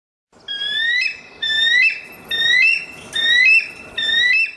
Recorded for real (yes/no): yes